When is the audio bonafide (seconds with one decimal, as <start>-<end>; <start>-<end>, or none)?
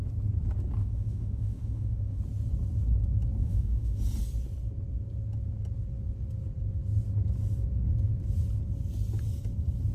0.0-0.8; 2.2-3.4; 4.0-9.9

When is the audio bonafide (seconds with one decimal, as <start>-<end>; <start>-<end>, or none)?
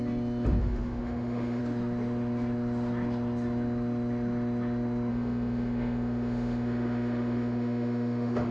0.0-0.6; 1.6-5.1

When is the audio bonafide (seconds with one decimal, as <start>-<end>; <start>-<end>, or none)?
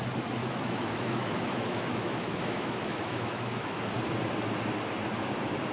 0.0-0.4; 3.8-5.7